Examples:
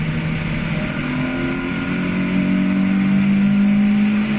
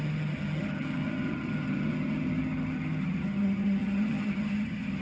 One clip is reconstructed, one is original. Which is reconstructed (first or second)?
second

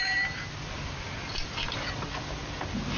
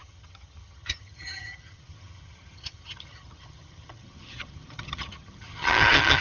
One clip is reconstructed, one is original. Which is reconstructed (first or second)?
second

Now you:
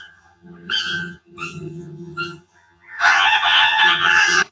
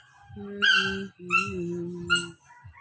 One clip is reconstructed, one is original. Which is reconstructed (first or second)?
first